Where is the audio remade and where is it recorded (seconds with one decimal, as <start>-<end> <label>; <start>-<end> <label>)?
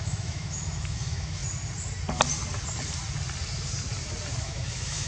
0.0-1.4 remade; 1.4-4.4 recorded; 4.4-5.1 remade